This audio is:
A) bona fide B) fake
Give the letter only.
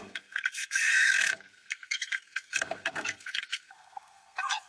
B